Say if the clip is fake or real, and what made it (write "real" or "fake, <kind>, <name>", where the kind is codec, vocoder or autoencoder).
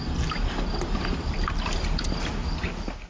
real